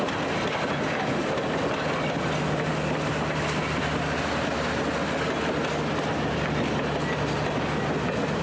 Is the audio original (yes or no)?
yes